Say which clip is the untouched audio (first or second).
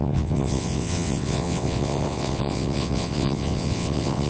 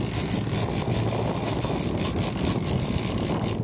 second